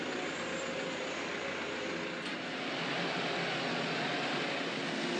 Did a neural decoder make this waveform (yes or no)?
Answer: no